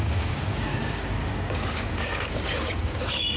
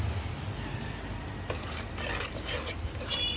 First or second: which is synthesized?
first